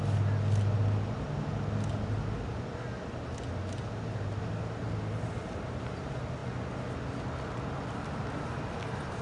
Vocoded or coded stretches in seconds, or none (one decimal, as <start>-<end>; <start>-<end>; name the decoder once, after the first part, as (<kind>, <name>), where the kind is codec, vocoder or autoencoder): none